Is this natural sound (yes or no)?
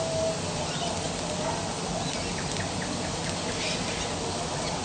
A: yes